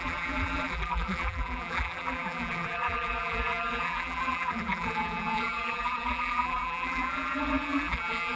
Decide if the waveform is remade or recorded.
remade